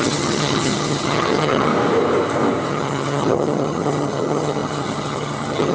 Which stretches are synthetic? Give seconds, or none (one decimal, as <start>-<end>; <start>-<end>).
0.0-1.7; 2.7-5.7